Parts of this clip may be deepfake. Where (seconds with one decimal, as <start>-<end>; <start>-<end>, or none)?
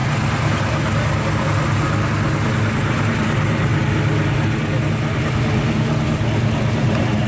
none